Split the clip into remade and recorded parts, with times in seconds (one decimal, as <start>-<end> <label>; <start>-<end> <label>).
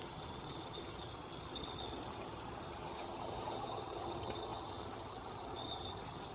0.0-6.3 remade